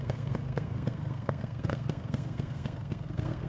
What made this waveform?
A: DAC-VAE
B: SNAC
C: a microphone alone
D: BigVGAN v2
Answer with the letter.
B